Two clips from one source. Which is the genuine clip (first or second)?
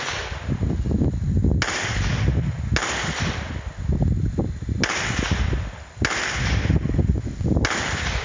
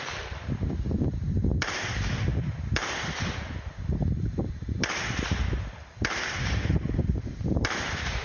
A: first